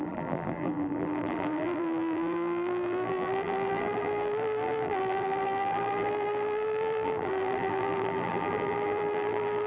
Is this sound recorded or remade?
remade